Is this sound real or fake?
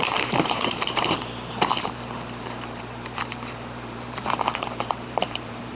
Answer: fake